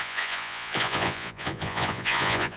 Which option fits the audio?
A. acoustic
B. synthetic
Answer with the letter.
B